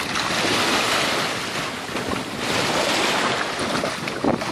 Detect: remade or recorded recorded